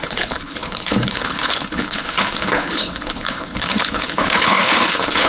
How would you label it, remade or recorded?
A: remade